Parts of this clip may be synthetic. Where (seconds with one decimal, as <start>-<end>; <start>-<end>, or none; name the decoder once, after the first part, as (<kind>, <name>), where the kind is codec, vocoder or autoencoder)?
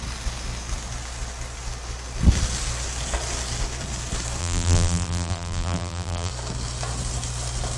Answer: 4.4-6.3 (vocoder, BigVGAN v2)